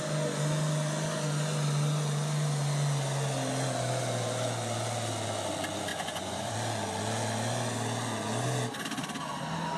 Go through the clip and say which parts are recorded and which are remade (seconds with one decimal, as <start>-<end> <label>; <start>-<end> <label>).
0.0-5.9 recorded; 5.9-6.5 remade; 6.5-9.8 recorded